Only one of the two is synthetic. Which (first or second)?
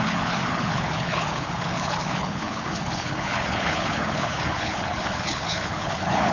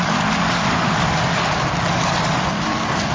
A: first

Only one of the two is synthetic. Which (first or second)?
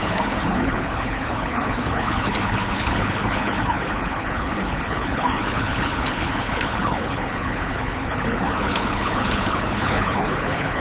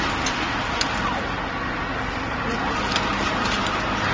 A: first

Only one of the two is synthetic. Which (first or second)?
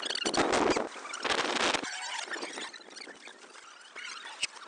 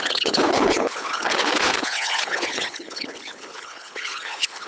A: second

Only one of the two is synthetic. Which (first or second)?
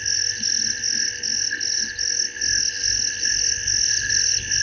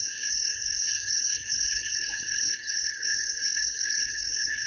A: second